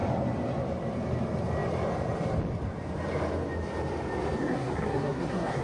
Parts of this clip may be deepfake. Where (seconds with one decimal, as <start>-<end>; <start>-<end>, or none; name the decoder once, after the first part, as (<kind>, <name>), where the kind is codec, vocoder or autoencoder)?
4.4-5.6 (codec, SNAC)